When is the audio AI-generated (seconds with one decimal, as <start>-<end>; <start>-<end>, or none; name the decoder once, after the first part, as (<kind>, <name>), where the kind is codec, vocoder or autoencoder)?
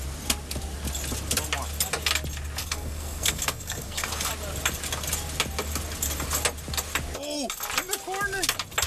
2.6-4.3 (codec, SNAC)